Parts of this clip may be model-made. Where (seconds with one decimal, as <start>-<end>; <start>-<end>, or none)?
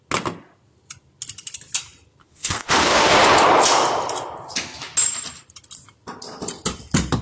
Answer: 2.2-3.1